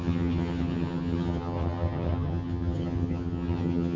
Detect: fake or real fake